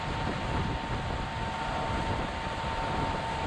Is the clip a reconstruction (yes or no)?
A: no